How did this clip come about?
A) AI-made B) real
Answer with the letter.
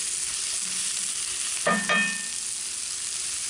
B